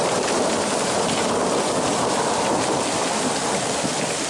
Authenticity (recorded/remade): recorded